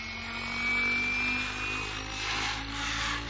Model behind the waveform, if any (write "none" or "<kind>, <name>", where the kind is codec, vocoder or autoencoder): none